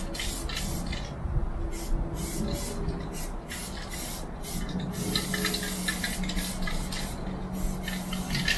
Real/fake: real